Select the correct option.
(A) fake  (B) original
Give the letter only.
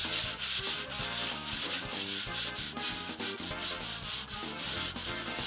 B